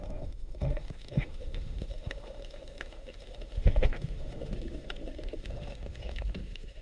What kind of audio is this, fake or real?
fake